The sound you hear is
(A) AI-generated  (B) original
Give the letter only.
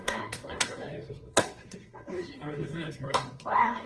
A